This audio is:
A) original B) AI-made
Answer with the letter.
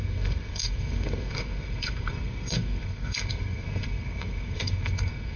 B